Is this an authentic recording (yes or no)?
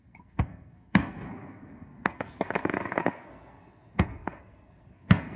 no